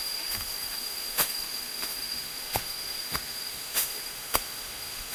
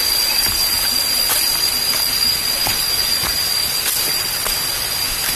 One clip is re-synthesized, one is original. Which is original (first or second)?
second